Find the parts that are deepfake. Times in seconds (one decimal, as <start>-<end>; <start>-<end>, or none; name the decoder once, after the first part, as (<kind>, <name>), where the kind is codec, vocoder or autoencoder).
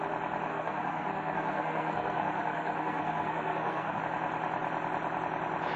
0.5-4.0 (codec, SNAC)